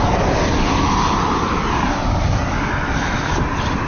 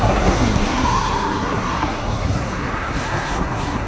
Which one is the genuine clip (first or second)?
first